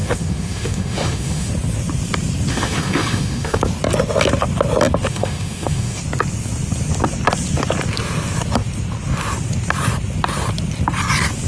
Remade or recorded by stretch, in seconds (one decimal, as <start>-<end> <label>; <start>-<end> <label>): 0.0-1.5 remade; 1.5-2.5 recorded; 2.5-3.6 remade; 3.6-5.1 recorded; 5.1-6.0 remade; 6.0-11.5 recorded